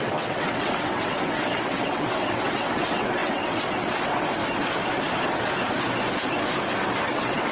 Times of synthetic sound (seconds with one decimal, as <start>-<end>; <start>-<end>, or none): 0.0-4.4; 7.1-7.5